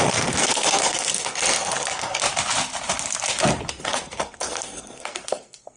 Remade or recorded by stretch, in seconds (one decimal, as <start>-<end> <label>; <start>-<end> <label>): 0.0-2.2 remade; 2.2-3.7 recorded; 3.7-5.8 remade